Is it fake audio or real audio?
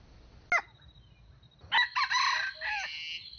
real